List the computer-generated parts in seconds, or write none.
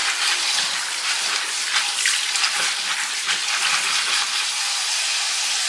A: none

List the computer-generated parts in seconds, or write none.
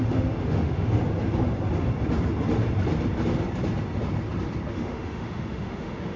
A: 0.0-1.0 (autoencoder, DAC-VAE); 4.7-6.2